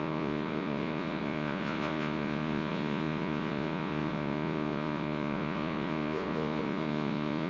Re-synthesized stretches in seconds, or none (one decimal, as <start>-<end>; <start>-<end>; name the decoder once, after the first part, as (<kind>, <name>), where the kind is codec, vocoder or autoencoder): 0.0-7.5 (vocoder, Vocos)